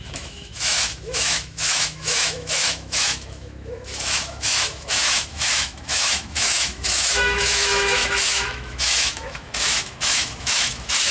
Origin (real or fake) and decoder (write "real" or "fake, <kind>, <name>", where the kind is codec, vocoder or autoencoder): fake, autoencoder, DAC-VAE